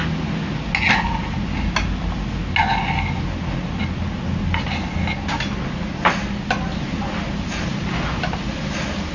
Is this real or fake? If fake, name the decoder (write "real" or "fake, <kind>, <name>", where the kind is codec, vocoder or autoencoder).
real